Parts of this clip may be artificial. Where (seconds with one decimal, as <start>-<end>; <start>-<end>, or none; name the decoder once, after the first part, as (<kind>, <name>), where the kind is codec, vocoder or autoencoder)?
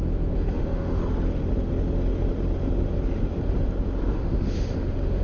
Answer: 0.0-1.0 (autoencoder, DAC-VAE); 4.1-5.2